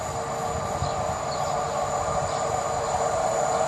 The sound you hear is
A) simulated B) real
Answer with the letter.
A